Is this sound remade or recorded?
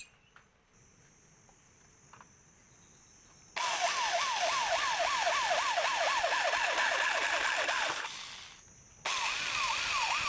recorded